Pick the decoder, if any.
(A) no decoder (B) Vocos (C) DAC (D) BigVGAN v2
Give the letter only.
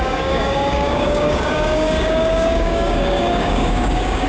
C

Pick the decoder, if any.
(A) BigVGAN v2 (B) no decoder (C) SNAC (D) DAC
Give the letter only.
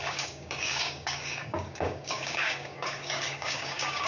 D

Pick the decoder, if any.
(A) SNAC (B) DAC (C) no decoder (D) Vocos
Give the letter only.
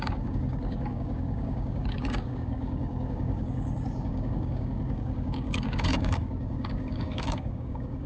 B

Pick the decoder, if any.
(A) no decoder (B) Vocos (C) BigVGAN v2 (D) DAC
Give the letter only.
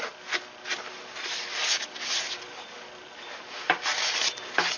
A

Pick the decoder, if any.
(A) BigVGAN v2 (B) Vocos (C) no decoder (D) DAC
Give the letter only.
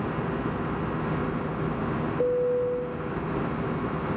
C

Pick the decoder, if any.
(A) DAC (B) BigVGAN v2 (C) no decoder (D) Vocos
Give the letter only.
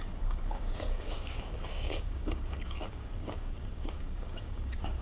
A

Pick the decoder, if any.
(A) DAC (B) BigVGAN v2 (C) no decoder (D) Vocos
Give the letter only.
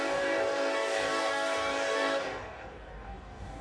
A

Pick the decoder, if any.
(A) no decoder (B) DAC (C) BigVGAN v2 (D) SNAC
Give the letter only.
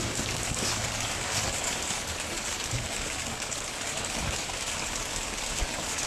B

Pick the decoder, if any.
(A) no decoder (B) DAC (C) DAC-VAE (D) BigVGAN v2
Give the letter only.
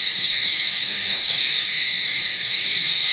B